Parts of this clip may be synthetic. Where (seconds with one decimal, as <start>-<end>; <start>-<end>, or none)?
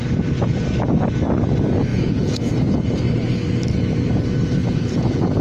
1.9-2.5; 4.6-5.4